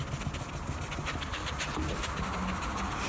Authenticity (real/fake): real